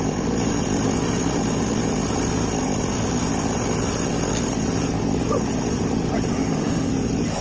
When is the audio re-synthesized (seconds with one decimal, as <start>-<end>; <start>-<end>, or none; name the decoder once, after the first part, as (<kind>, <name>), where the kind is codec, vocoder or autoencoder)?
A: 6.3-6.9 (autoencoder, DAC-VAE)